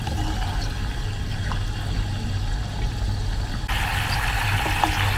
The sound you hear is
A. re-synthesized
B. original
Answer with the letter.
B